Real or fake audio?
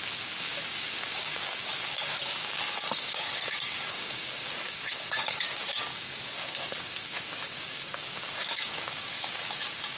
fake